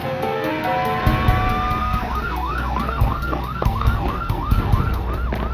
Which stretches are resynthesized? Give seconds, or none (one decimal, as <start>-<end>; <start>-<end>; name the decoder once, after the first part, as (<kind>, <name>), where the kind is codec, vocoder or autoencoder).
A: 0.0-0.5 (codec, SNAC); 1.8-5.1